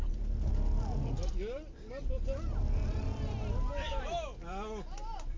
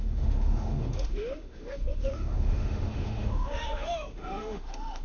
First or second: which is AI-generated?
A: second